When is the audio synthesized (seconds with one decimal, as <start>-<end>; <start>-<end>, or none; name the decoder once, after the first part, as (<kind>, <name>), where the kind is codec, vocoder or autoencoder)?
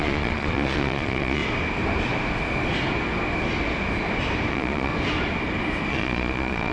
0.0-1.4 (vocoder, Vocos); 4.5-4.9; 5.9-6.7